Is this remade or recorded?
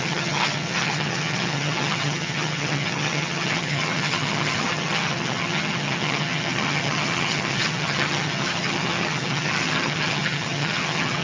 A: remade